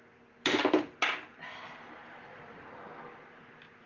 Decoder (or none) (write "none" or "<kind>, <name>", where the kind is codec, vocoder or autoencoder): none